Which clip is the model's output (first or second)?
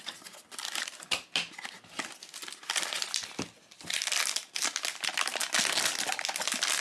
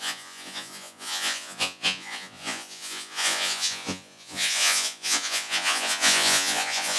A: second